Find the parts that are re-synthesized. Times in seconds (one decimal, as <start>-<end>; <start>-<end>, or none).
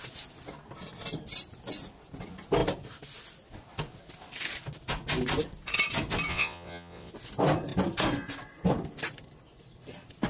6.3-7.1